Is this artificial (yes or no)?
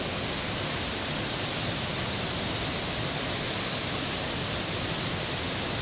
no